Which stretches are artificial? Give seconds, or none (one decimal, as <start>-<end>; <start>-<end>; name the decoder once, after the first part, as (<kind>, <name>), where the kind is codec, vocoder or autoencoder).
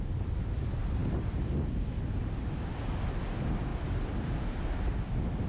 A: none